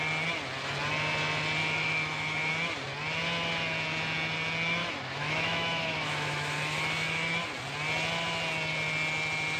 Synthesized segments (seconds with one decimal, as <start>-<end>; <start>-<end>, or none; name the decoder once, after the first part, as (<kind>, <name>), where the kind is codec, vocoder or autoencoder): 1.6-2.5 (autoencoder, DAC-VAE); 4.8-7.3

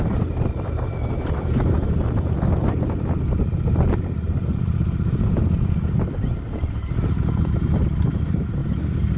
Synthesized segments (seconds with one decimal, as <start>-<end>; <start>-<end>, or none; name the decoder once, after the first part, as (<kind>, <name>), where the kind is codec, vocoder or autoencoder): 0.0-8.6 (vocoder, BigVGAN v2)

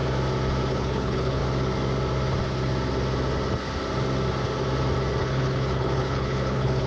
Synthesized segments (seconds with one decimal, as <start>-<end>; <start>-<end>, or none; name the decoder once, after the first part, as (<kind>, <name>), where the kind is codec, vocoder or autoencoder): 0.7-1.4 (codec, HILCodec); 5.2-6.9

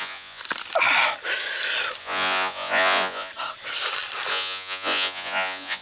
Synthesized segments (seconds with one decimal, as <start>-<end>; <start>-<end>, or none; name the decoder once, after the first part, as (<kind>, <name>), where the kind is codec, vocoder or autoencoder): 0.0-0.4 (vocoder, Vocos); 2.0-3.3; 4.3-5.8

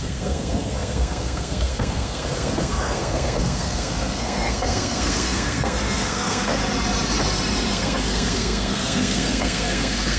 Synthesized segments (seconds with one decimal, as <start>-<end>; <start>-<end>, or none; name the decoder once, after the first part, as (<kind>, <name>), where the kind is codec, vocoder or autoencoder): 0.0-6.6 (codec, SNAC); 7.7-10.2

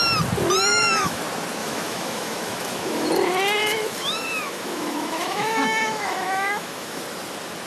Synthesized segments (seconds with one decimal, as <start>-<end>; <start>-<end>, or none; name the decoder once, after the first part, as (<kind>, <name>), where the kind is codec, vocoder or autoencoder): 0.7-1.2 (autoencoder, DAC-VAE); 1.6-3.1; 3.6-7.0